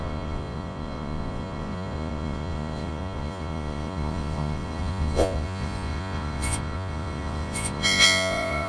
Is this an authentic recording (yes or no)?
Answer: no